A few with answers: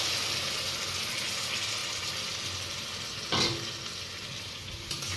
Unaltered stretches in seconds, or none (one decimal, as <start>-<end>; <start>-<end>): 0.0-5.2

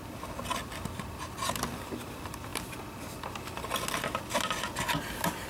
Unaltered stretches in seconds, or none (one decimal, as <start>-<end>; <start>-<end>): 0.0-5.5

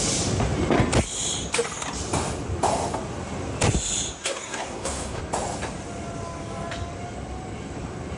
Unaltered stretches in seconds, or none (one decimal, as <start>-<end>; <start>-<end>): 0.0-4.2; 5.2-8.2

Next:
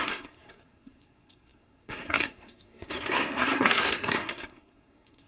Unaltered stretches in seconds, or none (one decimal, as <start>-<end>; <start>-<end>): none